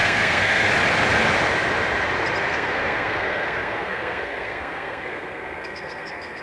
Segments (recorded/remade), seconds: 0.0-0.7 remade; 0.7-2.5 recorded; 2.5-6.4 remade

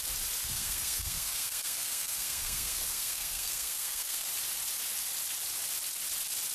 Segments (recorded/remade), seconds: 0.0-0.4 recorded; 0.4-4.3 remade; 4.3-6.5 recorded